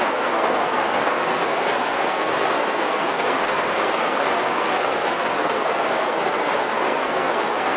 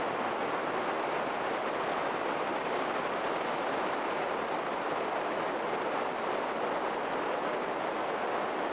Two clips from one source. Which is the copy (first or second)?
first